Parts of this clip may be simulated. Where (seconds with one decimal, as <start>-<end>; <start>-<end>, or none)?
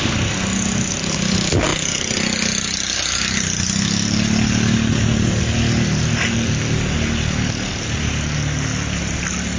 none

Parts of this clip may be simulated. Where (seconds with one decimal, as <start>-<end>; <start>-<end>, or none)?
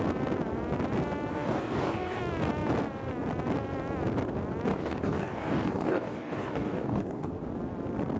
1.3-2.2; 4.7-7.3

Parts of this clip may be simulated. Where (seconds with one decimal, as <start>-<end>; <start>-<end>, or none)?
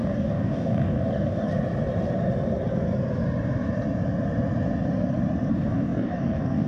0.0-1.5; 5.5-6.7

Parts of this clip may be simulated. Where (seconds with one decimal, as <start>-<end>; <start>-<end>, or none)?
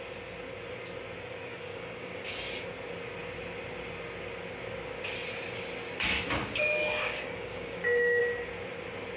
1.5-2.4; 6.4-8.2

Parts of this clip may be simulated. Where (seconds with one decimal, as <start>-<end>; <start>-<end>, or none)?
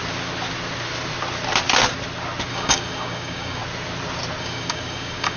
2.5-3.6; 4.4-5.4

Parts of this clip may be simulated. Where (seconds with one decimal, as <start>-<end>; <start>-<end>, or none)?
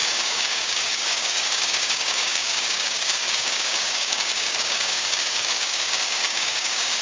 0.0-7.0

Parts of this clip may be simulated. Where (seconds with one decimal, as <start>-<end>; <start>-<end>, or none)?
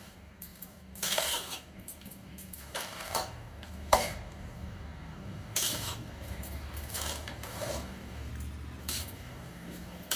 0.0-8.3; 8.8-10.2